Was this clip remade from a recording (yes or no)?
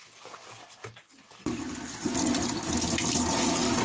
no